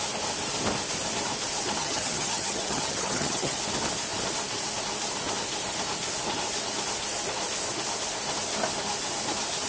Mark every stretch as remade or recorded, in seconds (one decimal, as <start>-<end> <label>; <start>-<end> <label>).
0.0-1.8 recorded; 1.8-3.6 remade; 3.6-9.7 recorded